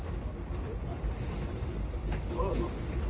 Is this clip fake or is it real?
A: real